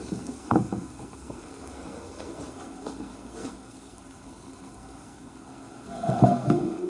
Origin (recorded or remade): remade